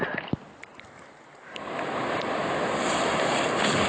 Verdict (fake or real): real